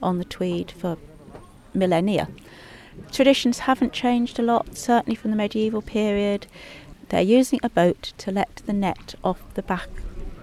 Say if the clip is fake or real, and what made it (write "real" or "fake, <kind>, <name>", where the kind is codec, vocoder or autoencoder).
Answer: real